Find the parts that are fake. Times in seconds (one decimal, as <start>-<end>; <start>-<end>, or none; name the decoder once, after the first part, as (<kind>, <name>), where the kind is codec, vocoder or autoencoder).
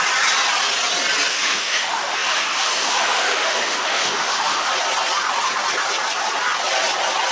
1.3-4.7 (autoencoder, DAC-VAE)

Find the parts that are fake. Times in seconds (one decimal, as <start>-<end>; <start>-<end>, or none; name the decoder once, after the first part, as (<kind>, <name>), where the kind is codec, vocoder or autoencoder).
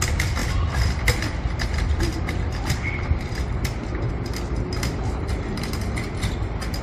none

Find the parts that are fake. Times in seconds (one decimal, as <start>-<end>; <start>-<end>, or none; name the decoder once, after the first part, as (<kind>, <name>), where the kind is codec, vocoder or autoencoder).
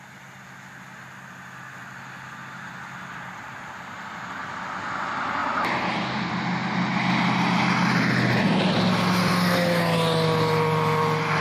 none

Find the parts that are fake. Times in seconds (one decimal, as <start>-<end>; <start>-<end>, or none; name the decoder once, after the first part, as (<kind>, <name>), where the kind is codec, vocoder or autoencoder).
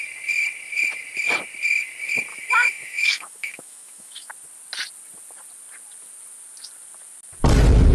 2.3-4.3 (autoencoder, DAC-VAE)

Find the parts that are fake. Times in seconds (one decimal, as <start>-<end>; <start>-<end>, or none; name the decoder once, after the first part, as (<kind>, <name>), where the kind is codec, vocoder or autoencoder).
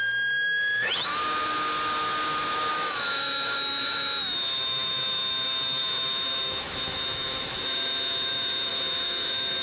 0.0-1.1 (autoencoder, DAC-VAE); 2.7-9.6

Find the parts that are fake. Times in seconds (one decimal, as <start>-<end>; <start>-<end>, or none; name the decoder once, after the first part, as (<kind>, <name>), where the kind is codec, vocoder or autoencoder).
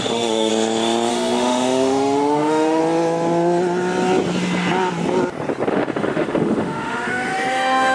0.0-0.5 (autoencoder, DAC-VAE); 1.1-2.8; 5.7-7.9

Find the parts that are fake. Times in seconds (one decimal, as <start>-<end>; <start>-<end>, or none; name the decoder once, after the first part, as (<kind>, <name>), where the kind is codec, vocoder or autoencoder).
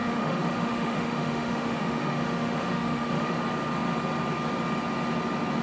0.0-3.4 (autoencoder, DAC-VAE)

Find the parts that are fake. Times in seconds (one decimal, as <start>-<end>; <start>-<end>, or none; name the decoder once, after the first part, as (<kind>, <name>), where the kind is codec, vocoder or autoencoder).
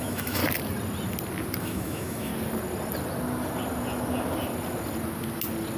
0.0-0.4 (autoencoder, DAC-VAE); 1.6-2.3